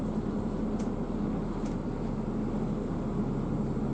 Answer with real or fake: real